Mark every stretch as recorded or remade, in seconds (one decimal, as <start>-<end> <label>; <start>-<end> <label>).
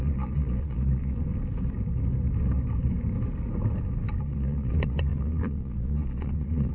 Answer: 0.0-1.3 remade; 1.3-4.2 recorded; 4.2-6.7 remade